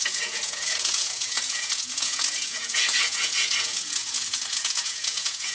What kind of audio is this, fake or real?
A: fake